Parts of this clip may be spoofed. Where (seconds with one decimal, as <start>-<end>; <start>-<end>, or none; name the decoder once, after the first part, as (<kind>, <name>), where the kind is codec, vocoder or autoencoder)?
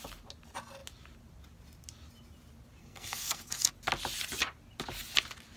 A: 2.8-3.7 (codec, SNAC)